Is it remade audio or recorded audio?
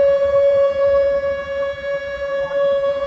remade